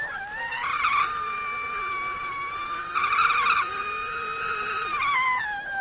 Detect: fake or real real